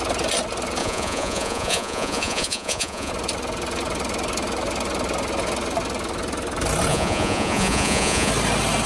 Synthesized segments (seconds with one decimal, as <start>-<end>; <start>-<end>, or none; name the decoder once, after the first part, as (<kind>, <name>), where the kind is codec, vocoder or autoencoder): 0.8-3.1 (vocoder, Vocos); 6.9-8.3